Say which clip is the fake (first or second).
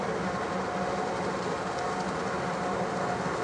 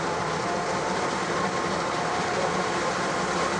second